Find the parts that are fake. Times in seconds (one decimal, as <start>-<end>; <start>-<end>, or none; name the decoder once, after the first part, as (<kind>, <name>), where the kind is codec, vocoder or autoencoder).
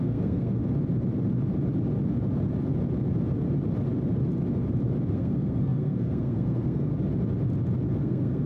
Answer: 0.0-0.6 (codec, SNAC); 5.1-6.9; 8.0-8.5